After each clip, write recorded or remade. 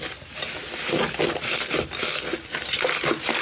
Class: recorded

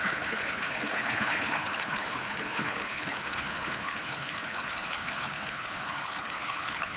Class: remade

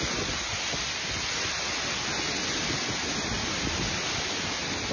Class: recorded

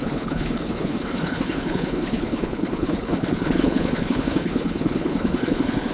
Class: remade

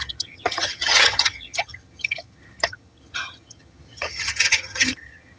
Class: remade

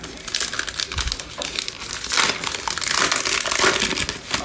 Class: recorded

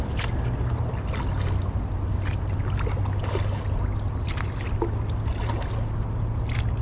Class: recorded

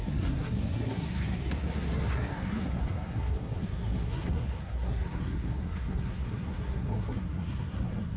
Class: remade